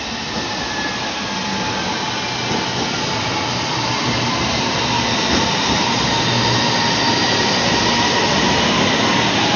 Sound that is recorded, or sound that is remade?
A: recorded